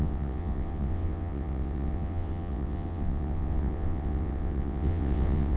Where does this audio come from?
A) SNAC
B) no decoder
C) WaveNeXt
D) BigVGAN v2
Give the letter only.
C